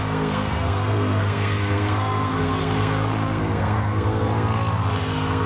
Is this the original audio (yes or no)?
no